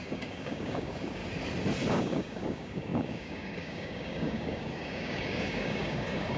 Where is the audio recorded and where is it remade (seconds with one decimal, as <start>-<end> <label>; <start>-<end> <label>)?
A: 0.0-1.2 remade; 1.2-1.9 recorded; 1.9-6.4 remade